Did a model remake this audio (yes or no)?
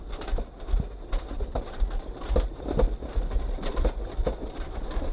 no